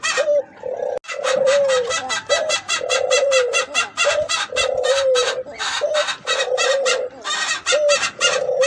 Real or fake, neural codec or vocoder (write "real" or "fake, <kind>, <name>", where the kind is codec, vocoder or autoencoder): real